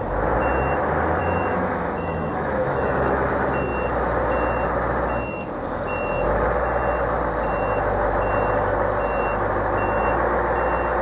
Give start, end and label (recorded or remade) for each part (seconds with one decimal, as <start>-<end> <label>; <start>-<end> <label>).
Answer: 0.0-1.2 recorded; 1.2-3.3 remade; 3.3-11.0 recorded